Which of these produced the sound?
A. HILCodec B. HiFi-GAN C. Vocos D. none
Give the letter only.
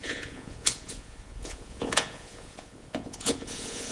C